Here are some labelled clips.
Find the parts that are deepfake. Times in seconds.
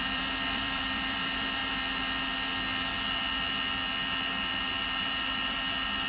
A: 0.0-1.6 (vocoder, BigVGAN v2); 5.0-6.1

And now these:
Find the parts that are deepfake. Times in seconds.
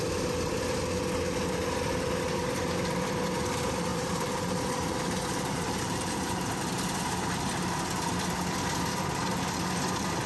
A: 3.9-6.6 (vocoder, BigVGAN v2)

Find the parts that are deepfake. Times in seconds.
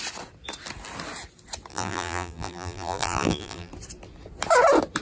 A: 1.7-3.7 (vocoder, BigVGAN v2)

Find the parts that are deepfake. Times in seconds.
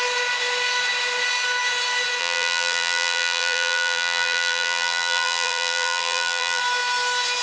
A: 2.2-6.6 (vocoder, BigVGAN v2)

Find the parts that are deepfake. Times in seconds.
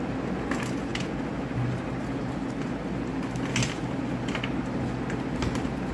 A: none